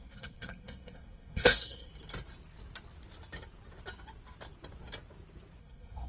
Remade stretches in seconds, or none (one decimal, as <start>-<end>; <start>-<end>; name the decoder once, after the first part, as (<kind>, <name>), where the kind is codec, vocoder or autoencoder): 0.0-1.9 (codec, SNAC); 5.6-6.1